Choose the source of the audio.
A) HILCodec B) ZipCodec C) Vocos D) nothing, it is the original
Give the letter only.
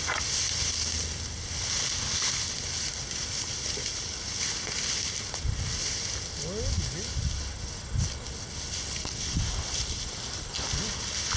D